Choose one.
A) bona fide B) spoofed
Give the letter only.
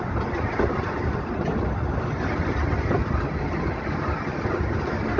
A